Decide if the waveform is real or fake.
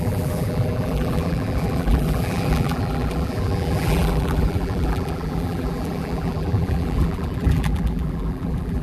fake